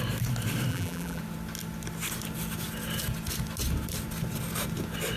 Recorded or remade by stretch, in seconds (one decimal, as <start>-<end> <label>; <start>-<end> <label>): 0.0-0.7 recorded; 0.7-1.2 remade; 1.2-5.2 recorded